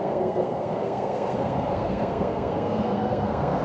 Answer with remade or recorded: remade